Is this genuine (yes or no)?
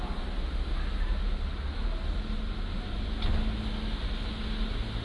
yes